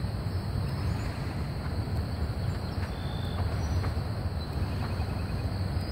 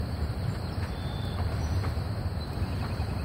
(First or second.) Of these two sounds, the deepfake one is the second